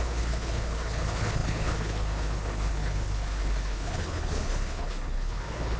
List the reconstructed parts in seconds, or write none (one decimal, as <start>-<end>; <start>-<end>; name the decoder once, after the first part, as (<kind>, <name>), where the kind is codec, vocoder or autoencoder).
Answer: 0.0-5.8 (codec, HILCodec)